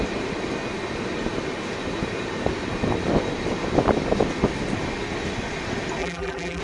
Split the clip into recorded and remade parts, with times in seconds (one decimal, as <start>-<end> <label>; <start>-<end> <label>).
0.0-6.0 recorded; 6.0-6.6 remade